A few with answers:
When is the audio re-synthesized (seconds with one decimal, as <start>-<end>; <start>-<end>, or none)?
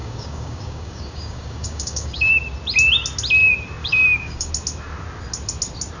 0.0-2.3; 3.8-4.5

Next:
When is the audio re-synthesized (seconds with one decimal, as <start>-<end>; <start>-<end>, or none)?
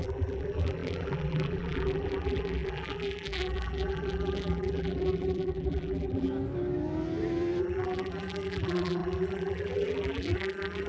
0.0-6.3; 7.6-10.9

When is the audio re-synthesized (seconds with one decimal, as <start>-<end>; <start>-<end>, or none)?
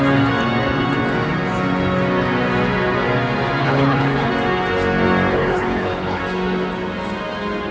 3.6-4.3; 5.3-6.2